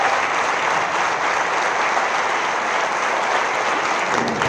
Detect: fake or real real